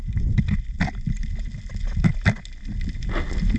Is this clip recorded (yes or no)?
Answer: yes